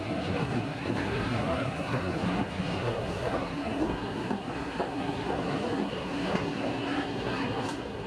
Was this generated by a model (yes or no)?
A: yes